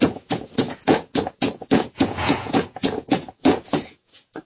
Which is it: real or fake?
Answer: fake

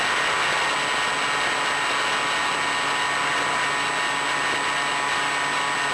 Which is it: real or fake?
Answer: real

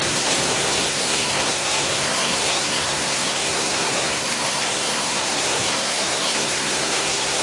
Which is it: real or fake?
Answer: fake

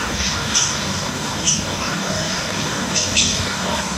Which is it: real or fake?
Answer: fake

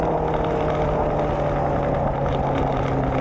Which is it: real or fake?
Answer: real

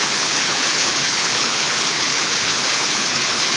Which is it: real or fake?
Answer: fake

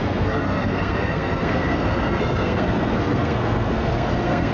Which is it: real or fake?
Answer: fake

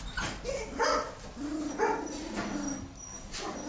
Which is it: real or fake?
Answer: real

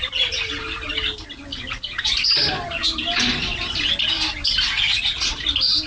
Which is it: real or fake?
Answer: real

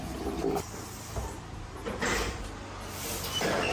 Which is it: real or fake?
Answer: real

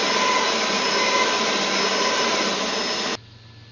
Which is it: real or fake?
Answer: real